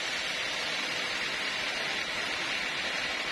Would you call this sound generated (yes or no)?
no